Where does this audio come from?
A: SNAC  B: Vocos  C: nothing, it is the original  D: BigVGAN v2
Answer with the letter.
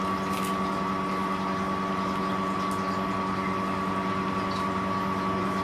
C